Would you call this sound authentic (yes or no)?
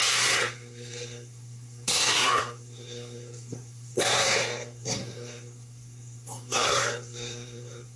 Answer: no